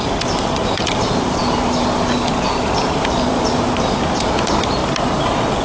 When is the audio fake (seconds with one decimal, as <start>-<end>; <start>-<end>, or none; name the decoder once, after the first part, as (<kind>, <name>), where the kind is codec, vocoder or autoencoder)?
none